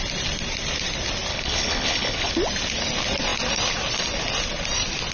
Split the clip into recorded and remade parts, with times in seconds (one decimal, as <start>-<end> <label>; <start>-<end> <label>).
0.0-1.3 recorded; 1.3-2.3 remade; 2.3-5.1 recorded